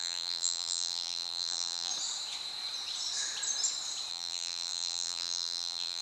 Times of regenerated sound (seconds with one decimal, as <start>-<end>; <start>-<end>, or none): 0.0-1.9; 4.1-6.0